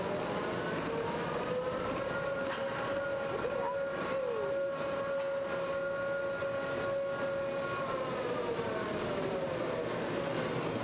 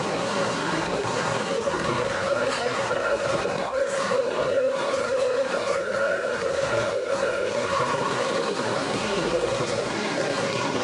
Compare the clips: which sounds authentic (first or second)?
first